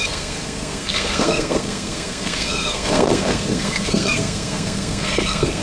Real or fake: fake